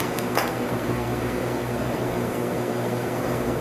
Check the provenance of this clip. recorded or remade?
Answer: remade